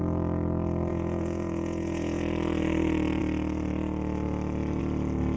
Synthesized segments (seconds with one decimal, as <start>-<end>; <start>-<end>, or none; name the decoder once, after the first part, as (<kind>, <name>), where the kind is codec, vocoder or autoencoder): 0.9-2.2 (vocoder, Vocos)